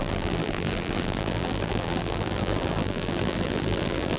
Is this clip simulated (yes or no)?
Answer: yes